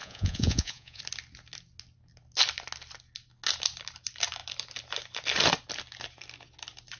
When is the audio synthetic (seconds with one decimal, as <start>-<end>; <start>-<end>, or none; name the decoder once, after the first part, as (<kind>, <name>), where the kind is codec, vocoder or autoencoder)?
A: 0.0-1.0 (vocoder, Vocos)